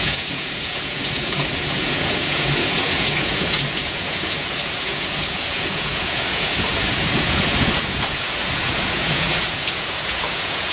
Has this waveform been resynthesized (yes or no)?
yes